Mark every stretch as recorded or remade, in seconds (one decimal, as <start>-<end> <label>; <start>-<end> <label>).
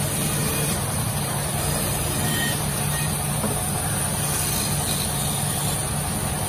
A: 0.0-0.4 recorded; 0.4-4.0 remade; 4.0-6.5 recorded